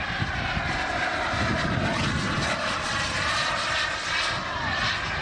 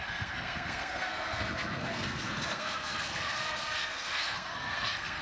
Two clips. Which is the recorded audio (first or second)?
first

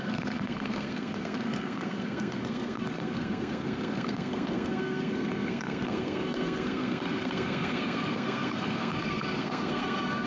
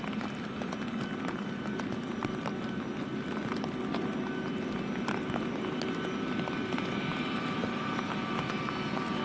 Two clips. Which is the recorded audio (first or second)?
second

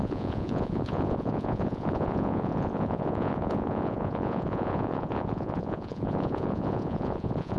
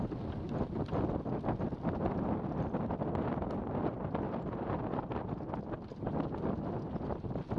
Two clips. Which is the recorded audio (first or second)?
second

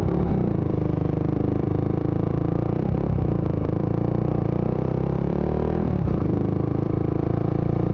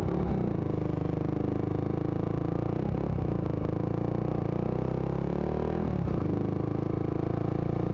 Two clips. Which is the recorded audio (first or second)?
second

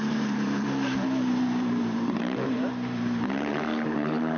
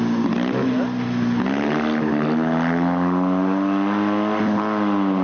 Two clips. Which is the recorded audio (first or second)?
second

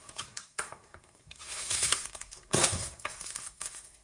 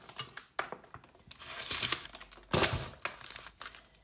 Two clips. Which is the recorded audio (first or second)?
second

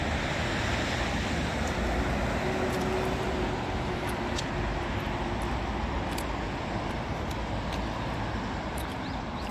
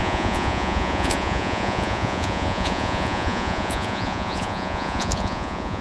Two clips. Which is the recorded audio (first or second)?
first